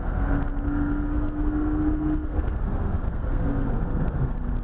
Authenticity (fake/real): fake